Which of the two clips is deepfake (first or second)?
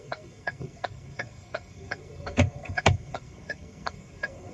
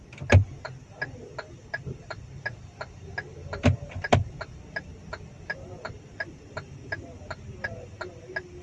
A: first